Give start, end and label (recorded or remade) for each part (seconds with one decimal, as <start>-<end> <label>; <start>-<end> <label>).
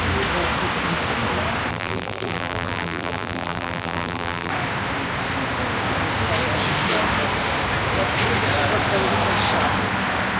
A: 0.0-1.7 recorded; 1.7-4.5 remade; 4.5-10.4 recorded